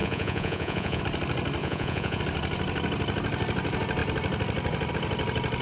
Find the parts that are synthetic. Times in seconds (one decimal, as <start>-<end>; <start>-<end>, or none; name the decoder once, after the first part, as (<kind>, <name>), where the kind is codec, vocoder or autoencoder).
0.0-1.0 (vocoder, Vocos); 1.6-2.2

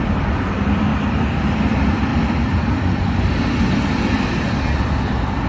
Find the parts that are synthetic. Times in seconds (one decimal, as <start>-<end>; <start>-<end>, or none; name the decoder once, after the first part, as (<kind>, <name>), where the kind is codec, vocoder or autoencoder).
2.1-4.1 (vocoder, BigVGAN v2)

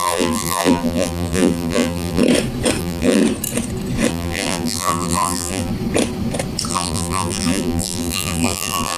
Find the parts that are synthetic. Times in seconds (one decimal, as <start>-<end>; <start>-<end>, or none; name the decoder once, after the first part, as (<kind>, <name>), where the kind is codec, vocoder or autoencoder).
0.0-2.2 (vocoder, BigVGAN v2); 2.8-3.2; 4.1-5.7; 6.7-9.0

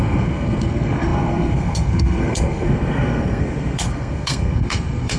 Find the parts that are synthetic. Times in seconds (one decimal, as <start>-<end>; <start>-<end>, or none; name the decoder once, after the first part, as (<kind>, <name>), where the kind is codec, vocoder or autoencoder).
0.0-5.2 (codec, SNAC)

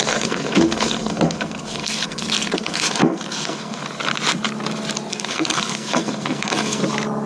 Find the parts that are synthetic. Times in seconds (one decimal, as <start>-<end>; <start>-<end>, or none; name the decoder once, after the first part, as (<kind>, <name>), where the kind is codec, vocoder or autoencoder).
0.0-3.8 (codec, SNAC); 5.1-6.8

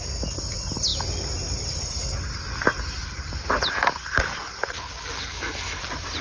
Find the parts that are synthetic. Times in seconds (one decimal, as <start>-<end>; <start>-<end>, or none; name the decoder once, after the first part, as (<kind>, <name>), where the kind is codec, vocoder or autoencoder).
5.3-5.8 (autoencoder, DAC-VAE)

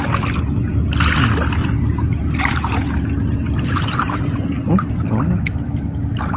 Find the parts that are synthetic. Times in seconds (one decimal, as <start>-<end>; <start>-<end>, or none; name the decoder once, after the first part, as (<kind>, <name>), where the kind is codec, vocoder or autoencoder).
1.6-5.0 (vocoder, BigVGAN v2)